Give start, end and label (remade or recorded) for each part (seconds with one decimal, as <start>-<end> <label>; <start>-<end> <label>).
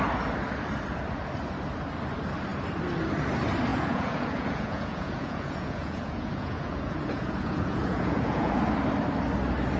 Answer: 0.0-3.7 recorded; 3.7-8.5 remade; 8.5-9.8 recorded